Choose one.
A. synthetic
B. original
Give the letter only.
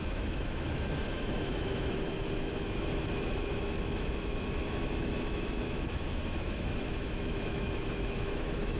A